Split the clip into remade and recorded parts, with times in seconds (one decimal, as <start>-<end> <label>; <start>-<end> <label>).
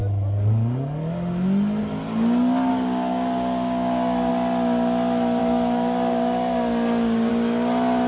0.0-2.7 recorded; 2.7-4.3 remade; 4.3-5.4 recorded; 5.4-7.3 remade; 7.3-8.1 recorded